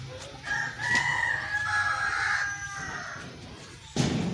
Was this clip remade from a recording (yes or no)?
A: no